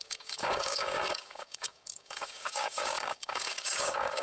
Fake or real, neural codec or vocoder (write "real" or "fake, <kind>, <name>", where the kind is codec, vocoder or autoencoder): fake, codec, DAC